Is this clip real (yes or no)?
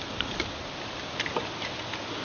yes